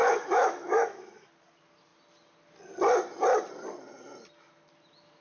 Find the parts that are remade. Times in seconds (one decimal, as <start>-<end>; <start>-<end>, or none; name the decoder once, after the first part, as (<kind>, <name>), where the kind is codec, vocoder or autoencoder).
0.0-1.3 (autoencoder, DAC-VAE)